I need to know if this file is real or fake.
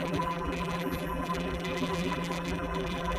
fake